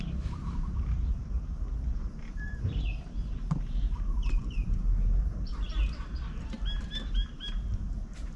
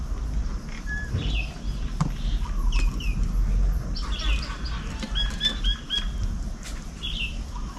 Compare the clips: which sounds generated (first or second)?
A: first